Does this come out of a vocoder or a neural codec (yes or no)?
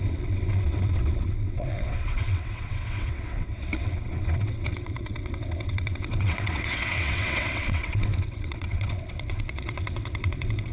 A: yes